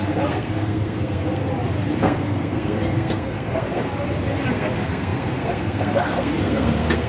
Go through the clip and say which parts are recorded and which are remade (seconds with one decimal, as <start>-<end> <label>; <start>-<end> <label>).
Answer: 0.0-1.4 remade; 1.4-2.0 recorded; 2.0-3.9 remade; 3.9-4.5 recorded; 4.5-7.1 remade